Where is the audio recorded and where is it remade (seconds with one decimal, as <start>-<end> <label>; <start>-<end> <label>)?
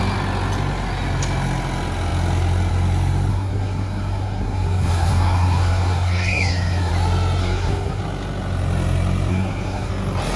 0.0-3.3 recorded; 3.3-6.9 remade; 6.9-7.4 recorded; 7.4-8.0 remade; 8.0-9.3 recorded; 9.3-9.9 remade; 9.9-10.4 recorded